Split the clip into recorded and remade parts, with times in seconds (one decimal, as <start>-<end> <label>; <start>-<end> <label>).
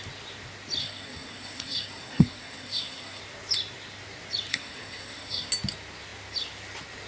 0.0-0.8 recorded; 0.8-3.2 remade; 3.2-4.5 recorded; 4.5-5.5 remade; 5.5-7.1 recorded